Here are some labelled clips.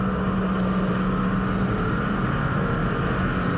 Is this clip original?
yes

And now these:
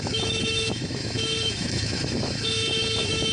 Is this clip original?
no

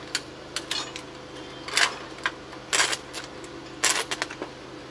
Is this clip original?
yes